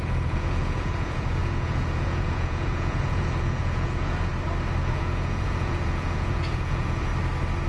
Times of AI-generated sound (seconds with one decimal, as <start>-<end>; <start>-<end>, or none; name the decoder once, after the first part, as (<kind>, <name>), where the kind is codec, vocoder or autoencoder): 0.0-4.3 (vocoder, Vocos); 4.8-7.1